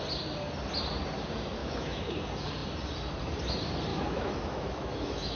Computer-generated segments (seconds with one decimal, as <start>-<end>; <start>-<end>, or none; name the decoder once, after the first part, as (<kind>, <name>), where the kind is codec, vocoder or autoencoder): 1.6-2.1 (autoencoder, DAC-VAE); 3.9-5.4